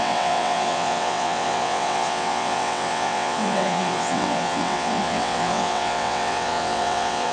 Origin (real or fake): fake